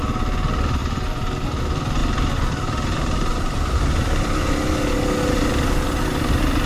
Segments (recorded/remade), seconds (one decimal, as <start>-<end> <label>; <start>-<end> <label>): 0.0-2.0 recorded; 2.0-4.4 remade; 4.4-6.7 recorded